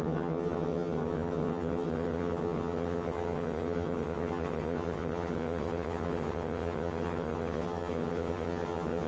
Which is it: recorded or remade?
remade